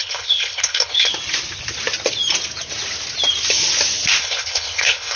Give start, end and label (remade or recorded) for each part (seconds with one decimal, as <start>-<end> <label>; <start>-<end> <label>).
0.0-1.1 remade; 1.1-4.2 recorded; 4.2-5.2 remade